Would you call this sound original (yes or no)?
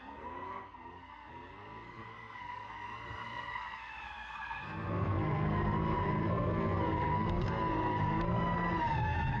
no